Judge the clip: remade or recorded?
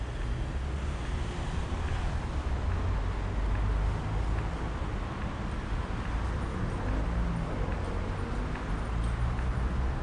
recorded